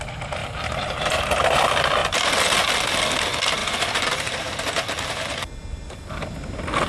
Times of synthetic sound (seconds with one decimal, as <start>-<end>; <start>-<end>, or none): 0.4-1.6; 2.0-2.7; 3.6-6.1